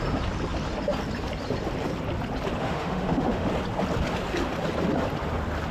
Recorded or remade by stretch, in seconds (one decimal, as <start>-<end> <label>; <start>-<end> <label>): 0.0-2.6 recorded; 2.6-3.5 remade; 3.5-5.7 recorded